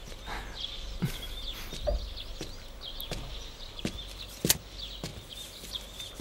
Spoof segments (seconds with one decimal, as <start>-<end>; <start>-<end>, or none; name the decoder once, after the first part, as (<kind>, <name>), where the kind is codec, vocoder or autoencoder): none